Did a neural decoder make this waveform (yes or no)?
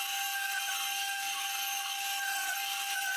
yes